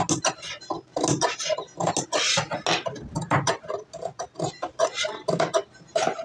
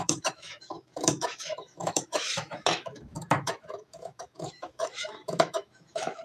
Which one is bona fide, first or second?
first